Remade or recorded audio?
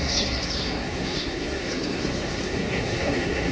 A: remade